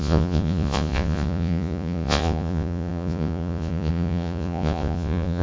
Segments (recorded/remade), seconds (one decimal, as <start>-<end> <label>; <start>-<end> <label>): 0.0-5.4 remade